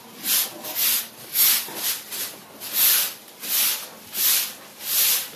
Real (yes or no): yes